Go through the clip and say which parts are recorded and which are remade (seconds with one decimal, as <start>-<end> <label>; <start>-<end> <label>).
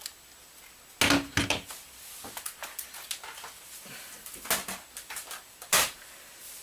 0.0-6.6 recorded